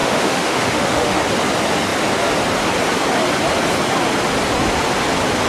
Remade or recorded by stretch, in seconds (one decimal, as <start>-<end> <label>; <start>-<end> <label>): 0.0-1.2 remade; 1.2-5.5 recorded